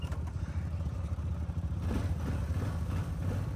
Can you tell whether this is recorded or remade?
recorded